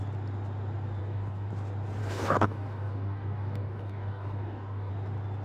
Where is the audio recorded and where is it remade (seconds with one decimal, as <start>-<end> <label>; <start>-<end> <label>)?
0.0-1.0 recorded; 1.0-1.5 remade; 1.5-2.0 recorded; 2.0-4.9 remade; 4.9-5.4 recorded